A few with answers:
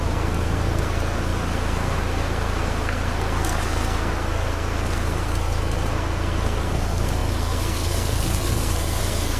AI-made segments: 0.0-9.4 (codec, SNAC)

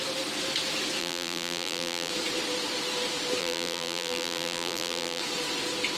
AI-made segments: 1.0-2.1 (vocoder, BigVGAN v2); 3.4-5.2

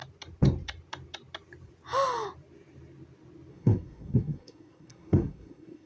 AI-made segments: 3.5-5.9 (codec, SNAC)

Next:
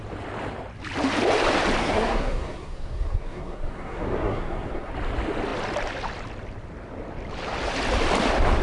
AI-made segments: 1.8-4.9 (codec, SNAC)